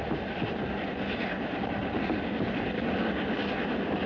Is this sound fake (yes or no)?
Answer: no